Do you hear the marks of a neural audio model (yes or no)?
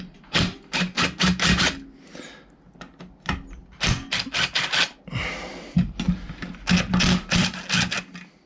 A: no